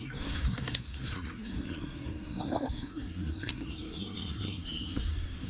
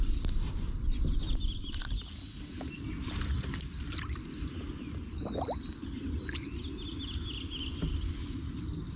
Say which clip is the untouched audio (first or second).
second